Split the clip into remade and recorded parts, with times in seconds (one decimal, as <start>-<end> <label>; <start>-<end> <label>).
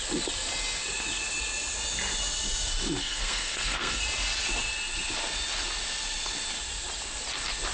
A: 0.0-3.0 recorded; 3.0-4.0 remade; 4.0-7.7 recorded